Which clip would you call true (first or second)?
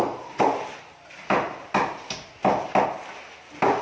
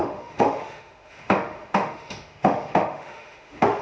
first